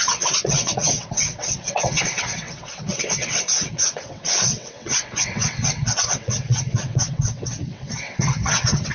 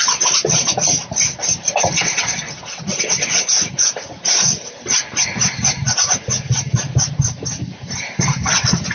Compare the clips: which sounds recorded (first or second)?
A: second